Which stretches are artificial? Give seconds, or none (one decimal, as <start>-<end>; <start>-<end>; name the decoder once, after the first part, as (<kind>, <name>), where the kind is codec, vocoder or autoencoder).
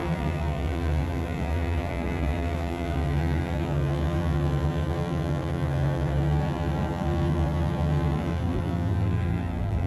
0.0-9.9 (vocoder, BigVGAN v2)